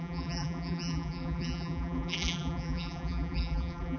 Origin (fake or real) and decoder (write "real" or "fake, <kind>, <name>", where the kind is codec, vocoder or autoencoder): fake, vocoder, BigVGAN v2